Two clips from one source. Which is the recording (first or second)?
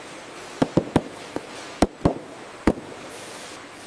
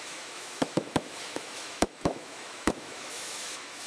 first